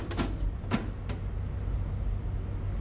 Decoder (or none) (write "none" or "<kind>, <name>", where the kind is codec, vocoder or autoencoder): none